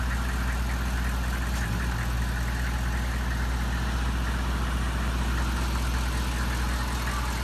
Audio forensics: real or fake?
real